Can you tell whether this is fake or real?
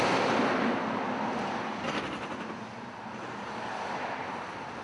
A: real